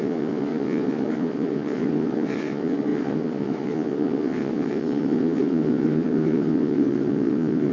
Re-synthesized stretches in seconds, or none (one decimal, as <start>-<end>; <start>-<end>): 0.0-7.7